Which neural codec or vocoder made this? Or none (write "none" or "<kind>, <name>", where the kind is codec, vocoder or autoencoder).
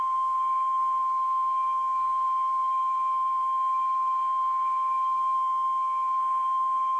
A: codec, SNAC